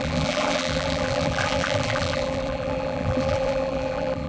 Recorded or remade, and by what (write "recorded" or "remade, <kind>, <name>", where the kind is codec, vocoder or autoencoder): remade, vocoder, BigVGAN v2